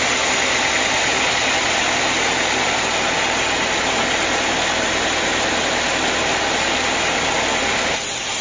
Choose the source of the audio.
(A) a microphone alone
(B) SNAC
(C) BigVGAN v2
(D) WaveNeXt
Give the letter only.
A